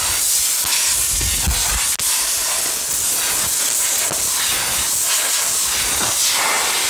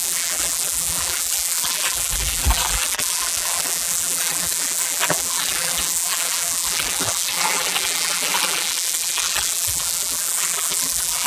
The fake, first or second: second